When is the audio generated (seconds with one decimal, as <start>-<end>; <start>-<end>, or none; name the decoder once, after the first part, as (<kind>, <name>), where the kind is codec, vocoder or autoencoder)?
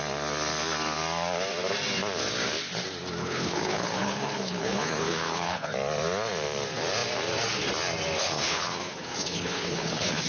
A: 3.2-5.7 (codec, HILCodec); 8.2-10.3